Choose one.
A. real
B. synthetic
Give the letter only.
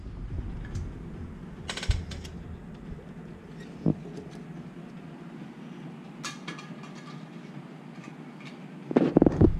A